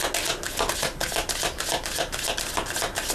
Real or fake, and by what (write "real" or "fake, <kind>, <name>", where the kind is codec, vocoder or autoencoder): real